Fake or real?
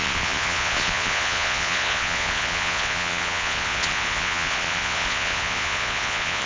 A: fake